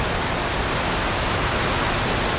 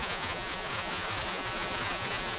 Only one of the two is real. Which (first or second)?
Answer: first